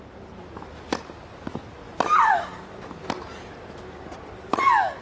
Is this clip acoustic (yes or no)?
yes